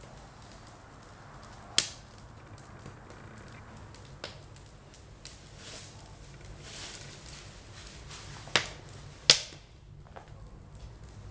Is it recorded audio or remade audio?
recorded